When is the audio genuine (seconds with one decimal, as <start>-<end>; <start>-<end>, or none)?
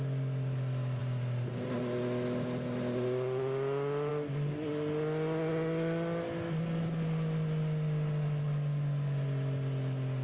0.0-10.2